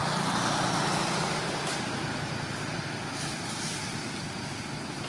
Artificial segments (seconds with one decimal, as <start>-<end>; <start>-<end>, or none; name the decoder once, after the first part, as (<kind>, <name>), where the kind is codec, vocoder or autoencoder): none

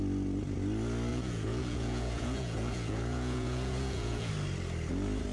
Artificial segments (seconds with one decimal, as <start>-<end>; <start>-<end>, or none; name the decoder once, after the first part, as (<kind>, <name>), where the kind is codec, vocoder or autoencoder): 1.1-4.3 (vocoder, Vocos)

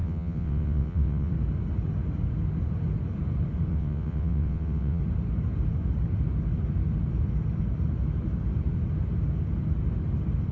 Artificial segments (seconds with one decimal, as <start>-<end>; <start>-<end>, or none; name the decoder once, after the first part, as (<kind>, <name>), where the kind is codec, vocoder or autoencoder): 0.0-1.3 (vocoder, WaveNeXt); 3.7-5.0

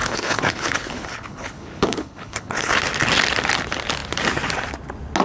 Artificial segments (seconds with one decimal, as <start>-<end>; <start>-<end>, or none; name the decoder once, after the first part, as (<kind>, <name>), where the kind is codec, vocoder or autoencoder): 0.0-2.8 (codec, HILCodec)

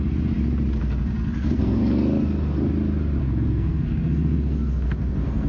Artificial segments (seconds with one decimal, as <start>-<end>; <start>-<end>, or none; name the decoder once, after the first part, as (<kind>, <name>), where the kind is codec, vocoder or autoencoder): 0.8-1.8 (codec, SNAC); 3.2-5.5